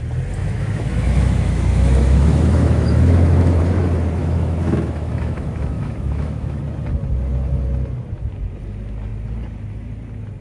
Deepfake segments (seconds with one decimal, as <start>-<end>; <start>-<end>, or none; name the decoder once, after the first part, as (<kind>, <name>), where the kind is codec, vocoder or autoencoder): 0.4-3.6 (autoencoder, DAC-VAE); 4.2-6.6